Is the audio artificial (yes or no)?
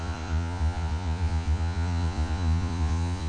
yes